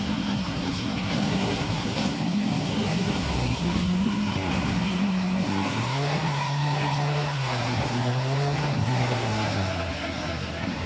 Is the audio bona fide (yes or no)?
no